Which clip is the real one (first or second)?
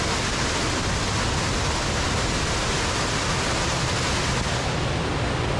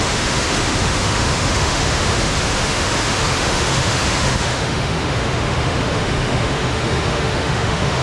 first